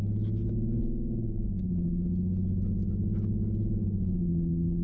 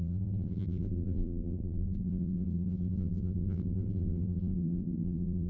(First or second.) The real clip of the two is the first